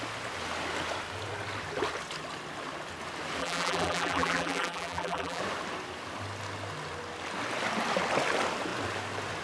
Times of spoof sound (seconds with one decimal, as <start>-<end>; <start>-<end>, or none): 3.4-5.4